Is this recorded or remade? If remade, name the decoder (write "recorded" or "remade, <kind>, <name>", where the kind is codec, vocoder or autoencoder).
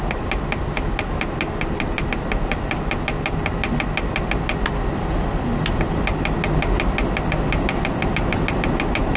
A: recorded